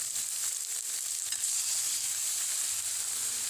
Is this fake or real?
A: fake